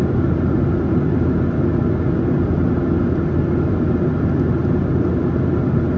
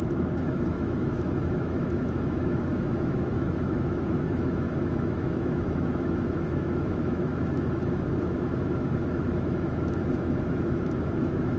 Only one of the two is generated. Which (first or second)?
second